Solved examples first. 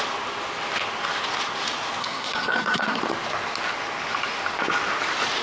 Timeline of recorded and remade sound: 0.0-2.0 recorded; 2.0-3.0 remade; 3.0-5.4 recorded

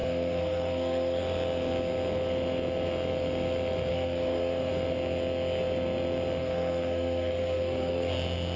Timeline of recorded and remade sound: 0.0-1.2 remade; 1.2-3.9 recorded; 3.9-4.7 remade; 4.7-6.4 recorded; 6.4-8.1 remade; 8.1-8.6 recorded

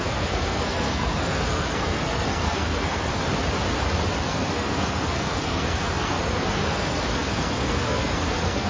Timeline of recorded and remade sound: 0.0-3.2 remade; 3.2-4.2 recorded; 4.2-8.7 remade

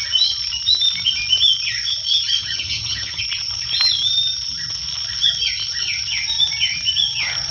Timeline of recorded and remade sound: 0.0-2.4 recorded; 2.4-3.2 remade; 3.2-7.5 recorded

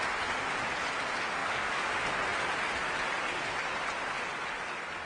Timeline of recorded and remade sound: 0.0-1.4 recorded; 1.4-1.9 remade; 1.9-5.1 recorded

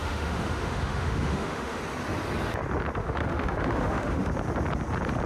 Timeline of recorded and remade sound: 0.0-1.8 remade; 1.8-3.0 recorded; 3.0-4.3 remade; 4.3-5.3 recorded